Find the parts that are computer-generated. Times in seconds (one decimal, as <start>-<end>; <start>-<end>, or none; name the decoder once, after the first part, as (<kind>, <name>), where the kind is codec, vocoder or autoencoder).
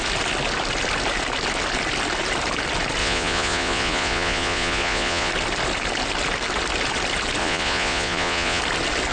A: 3.0-5.3 (vocoder, Vocos); 7.4-8.6